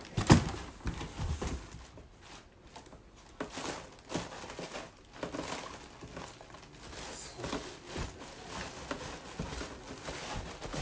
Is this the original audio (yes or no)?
yes